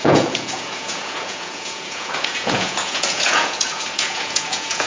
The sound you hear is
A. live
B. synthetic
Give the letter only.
B